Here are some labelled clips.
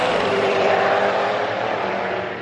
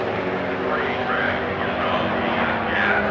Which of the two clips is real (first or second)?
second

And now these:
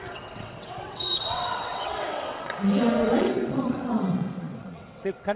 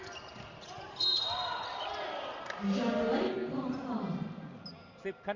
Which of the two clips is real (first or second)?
second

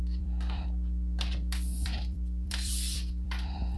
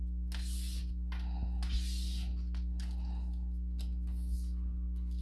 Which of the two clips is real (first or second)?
second